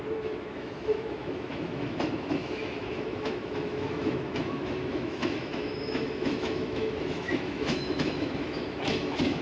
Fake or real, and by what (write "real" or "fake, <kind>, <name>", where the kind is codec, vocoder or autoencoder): fake, autoencoder, DAC-VAE